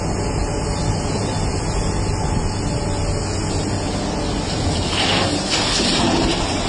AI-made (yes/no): no